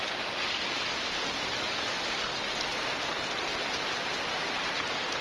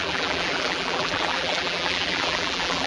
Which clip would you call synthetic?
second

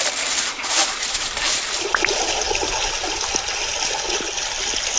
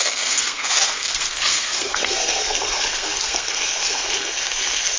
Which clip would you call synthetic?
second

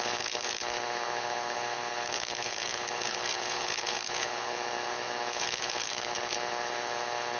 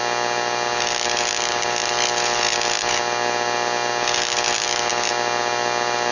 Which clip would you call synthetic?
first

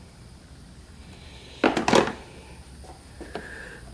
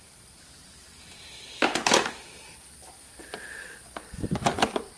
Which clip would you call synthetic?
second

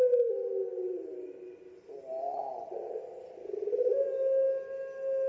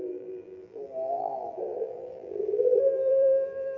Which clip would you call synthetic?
second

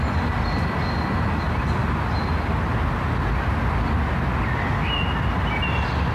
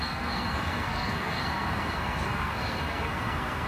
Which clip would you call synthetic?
second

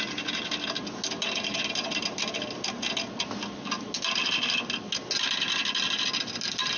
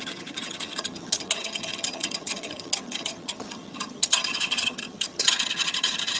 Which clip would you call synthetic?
second